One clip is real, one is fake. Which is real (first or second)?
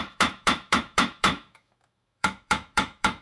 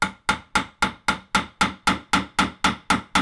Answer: second